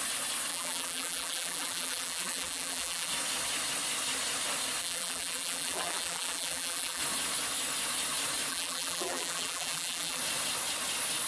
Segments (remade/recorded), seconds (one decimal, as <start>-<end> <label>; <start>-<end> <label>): 0.0-0.5 recorded; 0.5-3.1 remade; 3.1-4.8 recorded; 4.8-7.0 remade; 7.0-8.5 recorded; 8.5-10.2 remade; 10.2-11.3 recorded